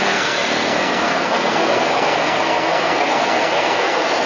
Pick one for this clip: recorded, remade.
remade